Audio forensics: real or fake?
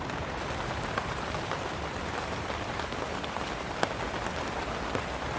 real